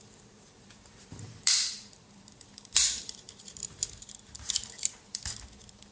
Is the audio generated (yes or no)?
yes